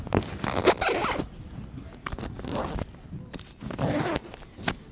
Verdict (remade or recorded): recorded